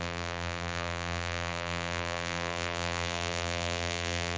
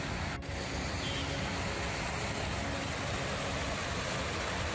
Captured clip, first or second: second